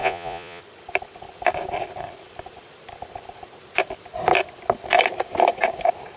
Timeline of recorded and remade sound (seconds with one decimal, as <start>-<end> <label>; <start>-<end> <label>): 0.0-0.6 remade; 0.6-6.2 recorded